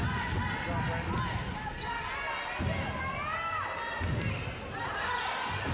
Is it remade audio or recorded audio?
recorded